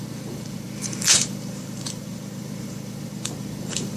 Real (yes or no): no